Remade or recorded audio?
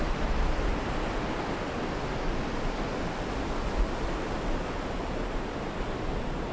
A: recorded